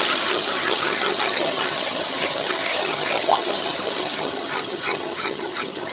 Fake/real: fake